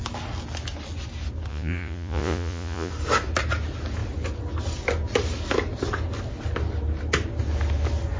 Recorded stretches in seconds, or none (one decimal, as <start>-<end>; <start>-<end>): 0.0-1.5; 2.9-8.2